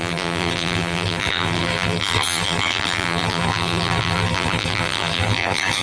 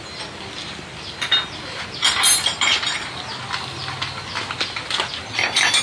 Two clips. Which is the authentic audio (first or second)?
second